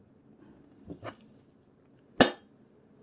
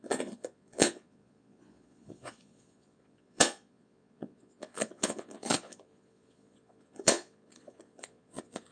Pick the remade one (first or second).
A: second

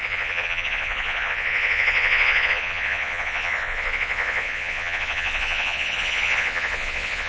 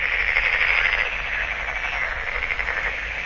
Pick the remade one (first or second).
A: first